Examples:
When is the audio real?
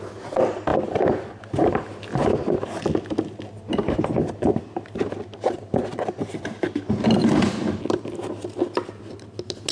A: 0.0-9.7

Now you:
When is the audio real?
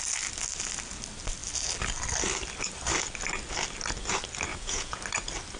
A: 0.0-4.5; 5.0-5.6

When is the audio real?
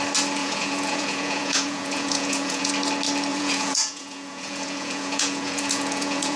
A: 0.0-0.4; 2.7-3.3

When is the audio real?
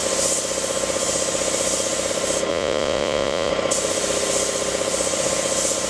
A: 0.0-2.5; 3.5-5.9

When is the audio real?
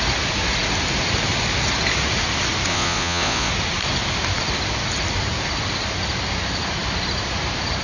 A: 0.0-2.7; 3.5-7.8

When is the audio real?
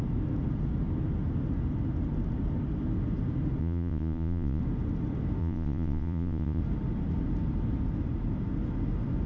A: 0.0-3.6; 4.6-5.4; 6.6-9.3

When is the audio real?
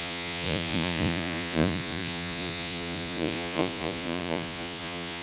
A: none